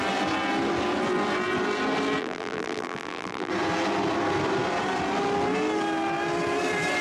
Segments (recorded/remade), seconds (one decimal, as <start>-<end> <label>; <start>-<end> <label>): 0.0-2.2 recorded; 2.2-3.5 remade; 3.5-7.0 recorded